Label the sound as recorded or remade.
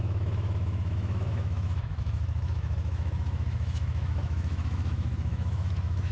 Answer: remade